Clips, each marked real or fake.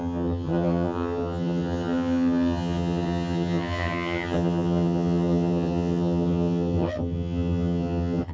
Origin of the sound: fake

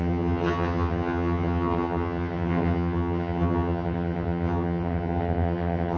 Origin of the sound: fake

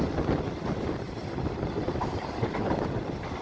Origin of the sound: real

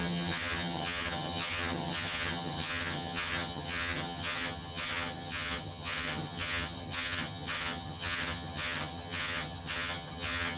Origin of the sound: fake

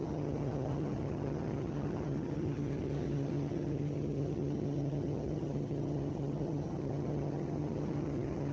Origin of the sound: fake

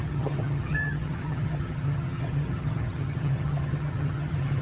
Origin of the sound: fake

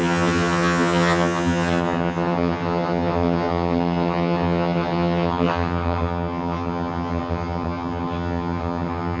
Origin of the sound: fake